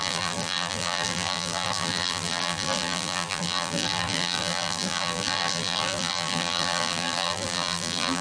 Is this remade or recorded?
remade